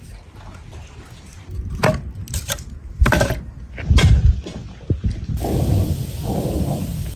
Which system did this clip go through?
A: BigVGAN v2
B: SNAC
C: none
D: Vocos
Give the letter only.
C